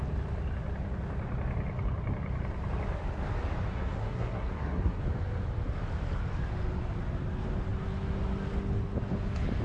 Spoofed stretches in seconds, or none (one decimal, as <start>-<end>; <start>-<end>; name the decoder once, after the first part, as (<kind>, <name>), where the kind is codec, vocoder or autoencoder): 3.7-5.0 (codec, SNAC)